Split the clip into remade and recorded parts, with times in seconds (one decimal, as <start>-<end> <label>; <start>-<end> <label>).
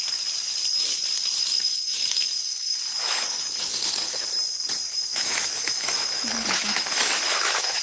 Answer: 0.0-1.5 recorded; 1.5-4.3 remade; 4.3-4.9 recorded; 4.9-7.8 remade